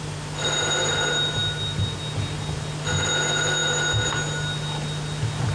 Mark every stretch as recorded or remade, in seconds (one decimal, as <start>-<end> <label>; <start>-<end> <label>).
0.0-5.5 recorded